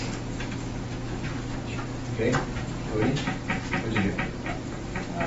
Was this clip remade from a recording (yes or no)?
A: no